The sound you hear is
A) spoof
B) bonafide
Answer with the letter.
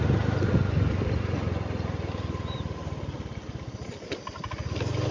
B